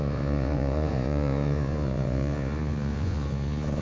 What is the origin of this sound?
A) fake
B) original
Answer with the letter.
A